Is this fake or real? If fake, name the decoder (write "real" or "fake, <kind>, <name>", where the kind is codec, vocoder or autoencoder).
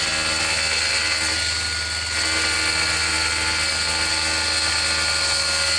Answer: real